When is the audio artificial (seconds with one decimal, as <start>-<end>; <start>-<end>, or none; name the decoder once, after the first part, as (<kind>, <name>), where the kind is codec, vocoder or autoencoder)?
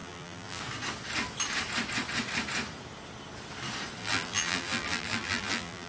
0.0-0.6 (vocoder, BigVGAN v2); 4.0-5.9